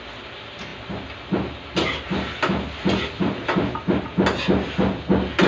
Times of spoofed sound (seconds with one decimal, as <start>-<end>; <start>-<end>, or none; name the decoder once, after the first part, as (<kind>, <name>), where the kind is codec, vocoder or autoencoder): none